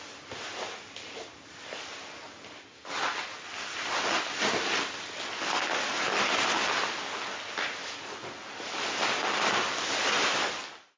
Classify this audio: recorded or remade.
recorded